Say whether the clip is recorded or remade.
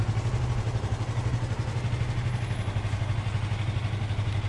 recorded